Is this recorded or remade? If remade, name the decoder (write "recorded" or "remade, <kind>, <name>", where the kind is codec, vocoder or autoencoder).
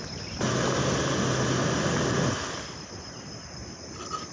recorded